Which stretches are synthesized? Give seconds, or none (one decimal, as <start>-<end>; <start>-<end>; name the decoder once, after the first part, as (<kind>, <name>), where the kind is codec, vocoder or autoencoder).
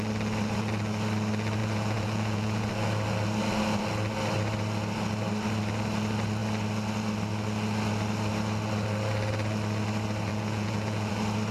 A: 1.6-2.7 (vocoder, Vocos); 10.3-11.1